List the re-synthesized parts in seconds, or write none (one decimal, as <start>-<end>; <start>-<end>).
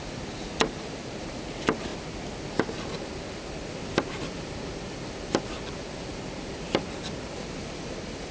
none